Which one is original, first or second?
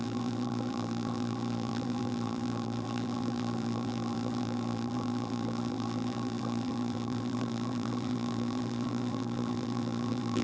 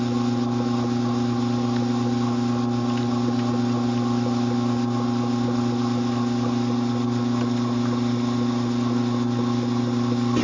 second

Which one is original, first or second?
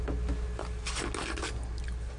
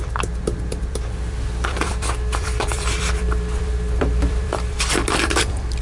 first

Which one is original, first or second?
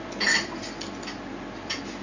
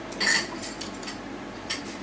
first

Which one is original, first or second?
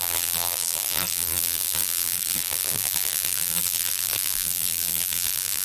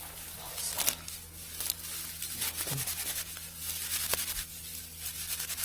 second